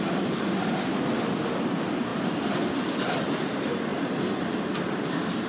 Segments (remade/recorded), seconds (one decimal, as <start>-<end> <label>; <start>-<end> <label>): 0.0-5.5 recorded